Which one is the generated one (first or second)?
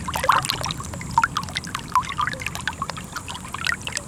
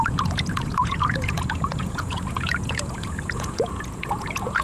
second